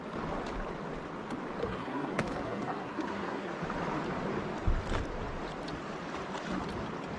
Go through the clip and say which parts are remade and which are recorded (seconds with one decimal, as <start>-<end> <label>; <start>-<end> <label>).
0.0-1.6 recorded; 1.6-3.5 remade; 3.5-7.2 recorded